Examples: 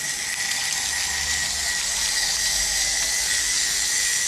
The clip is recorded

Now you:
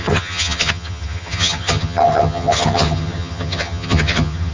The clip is remade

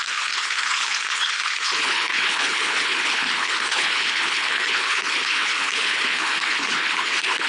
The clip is remade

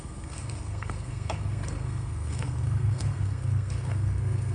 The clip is remade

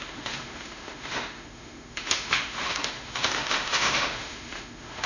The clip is remade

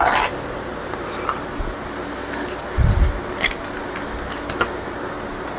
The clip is recorded